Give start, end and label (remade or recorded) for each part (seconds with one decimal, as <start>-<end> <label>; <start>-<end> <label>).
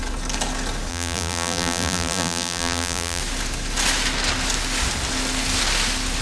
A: 0.0-0.9 recorded; 0.9-3.2 remade; 3.2-6.2 recorded